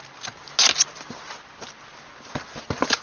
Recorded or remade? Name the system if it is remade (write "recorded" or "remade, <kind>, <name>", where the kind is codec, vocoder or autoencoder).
recorded